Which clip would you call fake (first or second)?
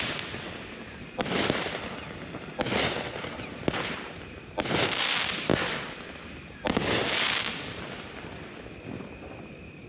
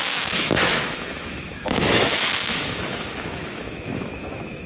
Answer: second